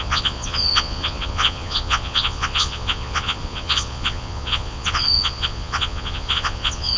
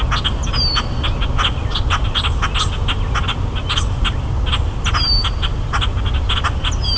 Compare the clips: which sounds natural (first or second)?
second